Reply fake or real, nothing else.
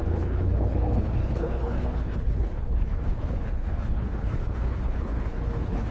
fake